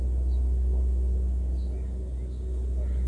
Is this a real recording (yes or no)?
yes